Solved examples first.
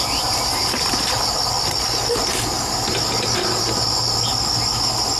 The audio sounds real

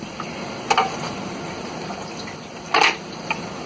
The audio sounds real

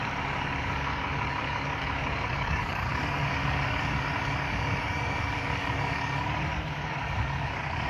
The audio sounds fake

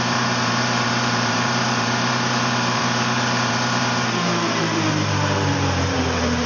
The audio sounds fake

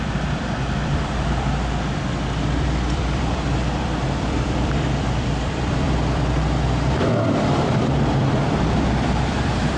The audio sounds fake